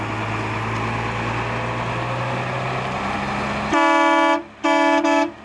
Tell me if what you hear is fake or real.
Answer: real